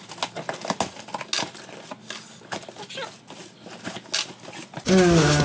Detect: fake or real real